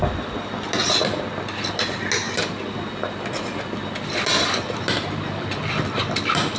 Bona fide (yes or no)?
yes